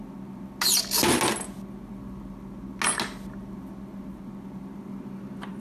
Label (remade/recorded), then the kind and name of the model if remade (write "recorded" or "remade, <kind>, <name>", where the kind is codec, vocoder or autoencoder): recorded